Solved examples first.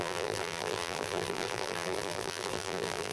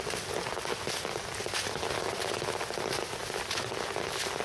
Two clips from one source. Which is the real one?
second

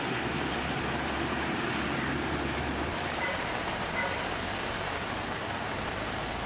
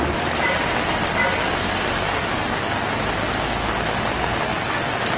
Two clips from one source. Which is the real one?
second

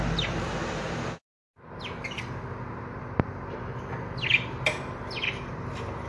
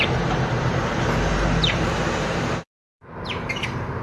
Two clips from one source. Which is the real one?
first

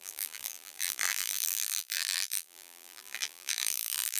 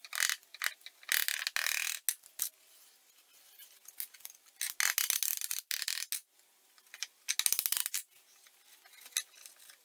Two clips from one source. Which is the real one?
second